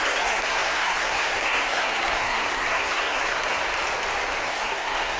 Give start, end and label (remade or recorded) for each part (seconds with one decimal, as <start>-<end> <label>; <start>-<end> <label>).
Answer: 0.0-3.6 remade; 3.6-4.4 recorded; 4.4-5.2 remade